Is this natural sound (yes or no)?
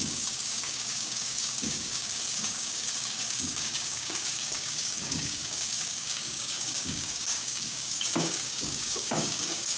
no